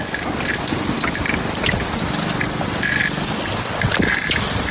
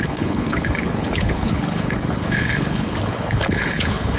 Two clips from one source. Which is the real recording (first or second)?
first